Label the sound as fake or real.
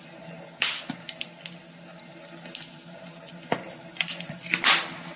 real